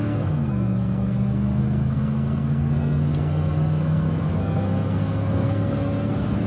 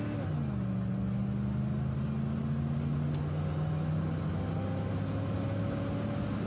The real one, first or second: second